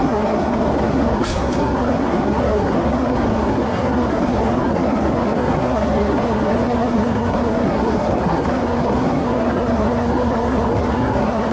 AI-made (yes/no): yes